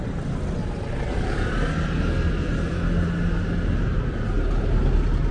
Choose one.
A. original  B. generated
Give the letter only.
A